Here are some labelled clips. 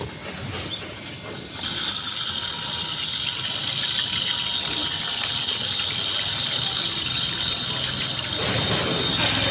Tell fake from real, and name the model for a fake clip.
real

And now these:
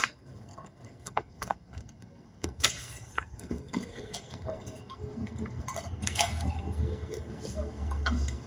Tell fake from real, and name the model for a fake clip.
fake, codec, SNAC